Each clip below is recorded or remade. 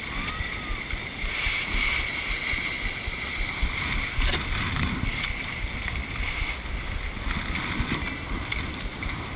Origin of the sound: recorded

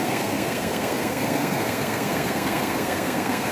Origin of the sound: remade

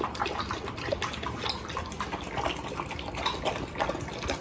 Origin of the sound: recorded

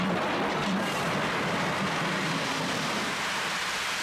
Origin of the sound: recorded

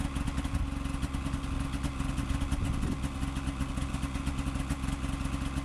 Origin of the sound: recorded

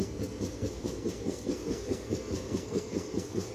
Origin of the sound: remade